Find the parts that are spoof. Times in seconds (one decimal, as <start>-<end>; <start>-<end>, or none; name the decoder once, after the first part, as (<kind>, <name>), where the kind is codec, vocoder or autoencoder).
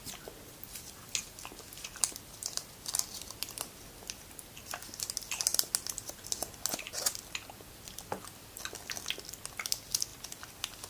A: none